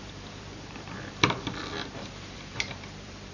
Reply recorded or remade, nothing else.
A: remade